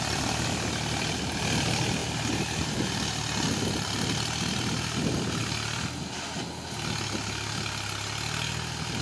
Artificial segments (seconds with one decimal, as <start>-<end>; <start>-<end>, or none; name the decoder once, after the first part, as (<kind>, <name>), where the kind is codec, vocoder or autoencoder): none